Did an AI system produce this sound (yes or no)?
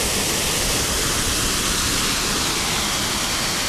no